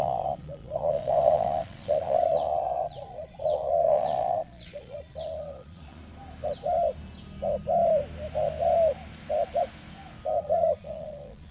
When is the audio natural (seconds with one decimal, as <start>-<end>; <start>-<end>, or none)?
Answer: 6.0-10.4